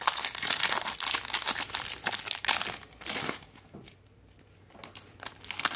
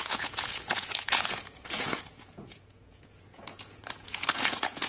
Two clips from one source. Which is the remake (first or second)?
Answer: second